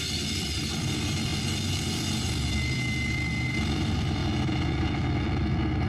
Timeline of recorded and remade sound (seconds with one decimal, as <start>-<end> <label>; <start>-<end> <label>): 0.0-1.3 remade; 1.3-2.2 recorded; 2.2-4.2 remade; 4.2-5.9 recorded